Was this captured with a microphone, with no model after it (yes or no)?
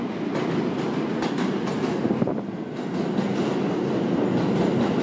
yes